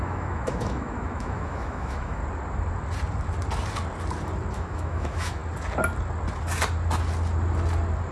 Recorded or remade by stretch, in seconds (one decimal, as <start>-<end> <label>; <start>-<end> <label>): 0.0-2.2 remade; 2.2-4.5 recorded; 4.5-5.4 remade; 5.4-8.1 recorded